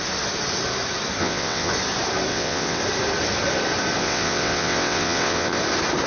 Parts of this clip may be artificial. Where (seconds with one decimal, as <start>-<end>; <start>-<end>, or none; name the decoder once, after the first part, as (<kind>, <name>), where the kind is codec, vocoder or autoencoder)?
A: 1.2-1.7 (vocoder, WaveNeXt); 2.3-2.8; 4.0-5.6